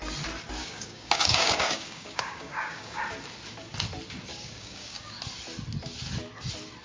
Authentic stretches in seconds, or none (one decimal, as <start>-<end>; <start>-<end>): 0.0-0.6; 3.0-4.3; 5.2-6.8

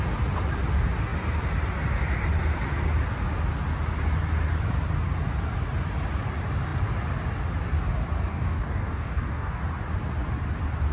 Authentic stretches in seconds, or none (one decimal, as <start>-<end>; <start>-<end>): 0.0-8.3; 9.6-10.9

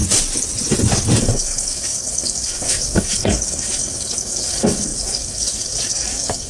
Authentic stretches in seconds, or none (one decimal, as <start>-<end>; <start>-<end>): 0.0-1.2